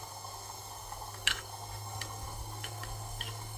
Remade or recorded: remade